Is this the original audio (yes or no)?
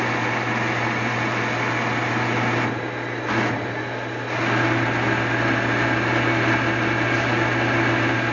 yes